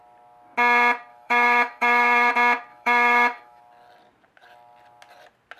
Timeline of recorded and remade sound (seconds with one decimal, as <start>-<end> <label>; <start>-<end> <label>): 0.0-1.1 recorded; 1.1-2.3 remade; 2.3-2.7 recorded; 2.7-3.6 remade; 3.6-5.6 recorded